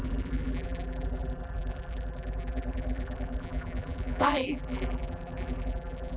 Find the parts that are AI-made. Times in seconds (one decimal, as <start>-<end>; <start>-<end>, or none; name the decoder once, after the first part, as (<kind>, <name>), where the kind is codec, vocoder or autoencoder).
0.0-6.2 (vocoder, BigVGAN v2)